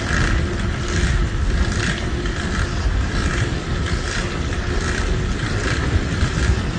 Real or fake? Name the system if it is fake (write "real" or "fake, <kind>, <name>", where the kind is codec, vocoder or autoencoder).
real